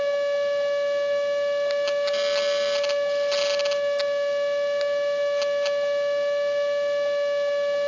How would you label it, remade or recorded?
recorded